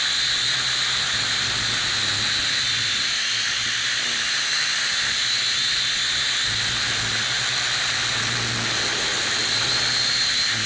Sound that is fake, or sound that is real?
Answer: real